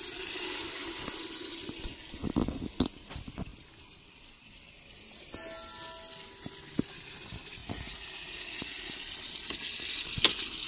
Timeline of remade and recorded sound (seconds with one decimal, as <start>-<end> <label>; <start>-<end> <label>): 0.0-7.6 recorded; 7.6-8.9 remade; 8.9-10.7 recorded